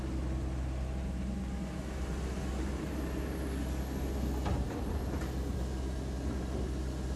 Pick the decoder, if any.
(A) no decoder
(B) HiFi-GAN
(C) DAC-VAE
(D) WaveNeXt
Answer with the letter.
A